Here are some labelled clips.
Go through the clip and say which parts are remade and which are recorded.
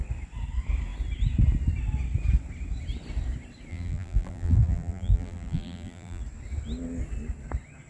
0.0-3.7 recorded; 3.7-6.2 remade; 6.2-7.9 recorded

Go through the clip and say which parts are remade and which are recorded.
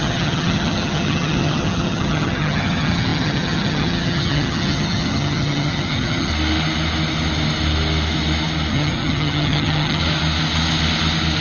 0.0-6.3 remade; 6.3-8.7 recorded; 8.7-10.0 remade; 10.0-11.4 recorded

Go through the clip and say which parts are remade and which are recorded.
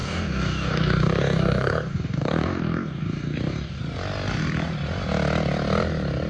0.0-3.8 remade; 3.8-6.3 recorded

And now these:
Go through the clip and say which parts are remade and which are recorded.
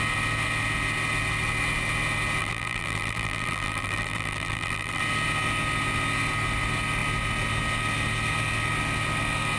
0.0-2.4 recorded; 2.4-5.0 remade; 5.0-9.6 recorded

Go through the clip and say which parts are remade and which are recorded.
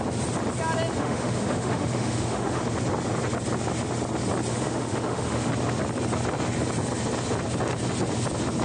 0.0-1.0 recorded; 1.0-2.6 remade; 2.6-4.5 recorded; 4.5-5.5 remade; 5.5-8.6 recorded